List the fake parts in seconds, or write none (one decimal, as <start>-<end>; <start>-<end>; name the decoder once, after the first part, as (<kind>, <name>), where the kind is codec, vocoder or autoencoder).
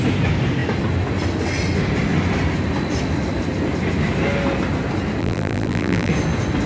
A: 5.2-6.1 (vocoder, BigVGAN v2)